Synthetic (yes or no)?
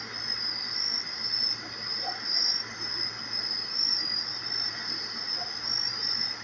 no